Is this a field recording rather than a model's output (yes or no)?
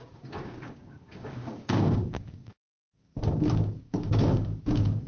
no